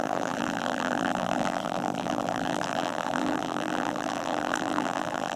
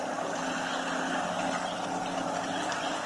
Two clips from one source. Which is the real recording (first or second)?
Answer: second